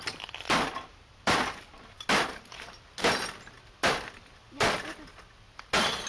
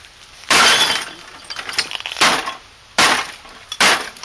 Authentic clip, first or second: second